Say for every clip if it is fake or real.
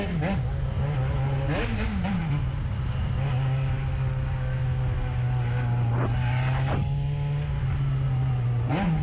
real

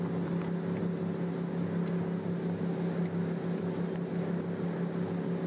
real